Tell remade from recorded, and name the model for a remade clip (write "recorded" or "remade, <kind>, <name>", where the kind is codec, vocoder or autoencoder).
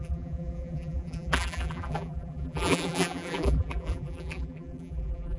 remade, vocoder, BigVGAN v2